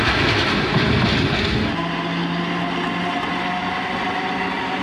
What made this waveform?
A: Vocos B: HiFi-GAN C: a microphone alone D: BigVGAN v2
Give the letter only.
C